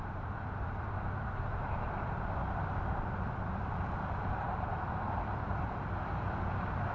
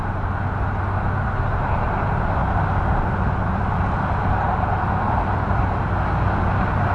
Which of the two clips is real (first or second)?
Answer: second